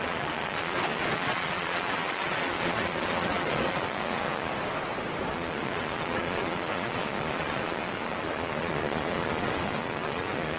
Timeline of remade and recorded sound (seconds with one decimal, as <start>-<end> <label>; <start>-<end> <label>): 0.0-4.5 remade; 4.5-5.3 recorded; 5.3-10.6 remade